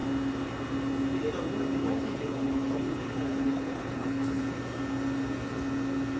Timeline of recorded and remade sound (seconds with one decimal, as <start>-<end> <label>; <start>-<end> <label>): 0.0-1.8 recorded; 1.8-4.4 remade; 4.4-6.2 recorded